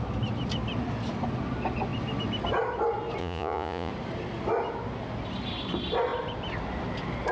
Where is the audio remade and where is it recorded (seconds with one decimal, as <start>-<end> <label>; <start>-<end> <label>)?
0.0-3.2 recorded; 3.2-3.9 remade; 3.9-7.3 recorded